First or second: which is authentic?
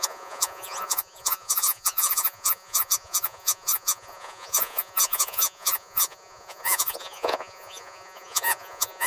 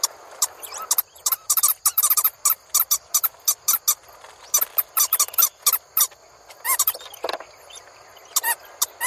second